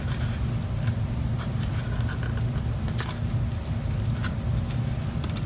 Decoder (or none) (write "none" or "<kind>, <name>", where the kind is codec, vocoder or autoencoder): none